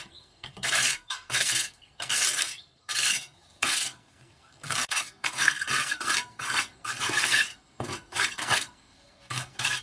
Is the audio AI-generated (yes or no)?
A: yes